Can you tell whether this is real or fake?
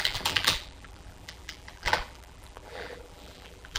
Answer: fake